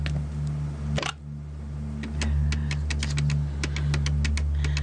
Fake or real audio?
real